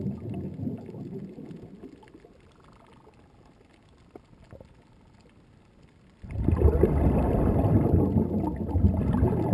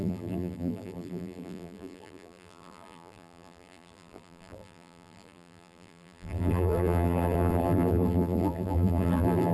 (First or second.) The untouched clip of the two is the first